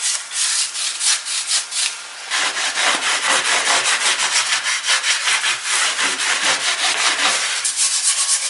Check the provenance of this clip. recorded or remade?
recorded